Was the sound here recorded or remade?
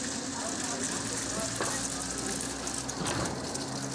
recorded